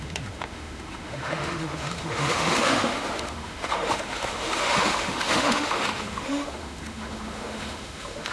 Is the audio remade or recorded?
remade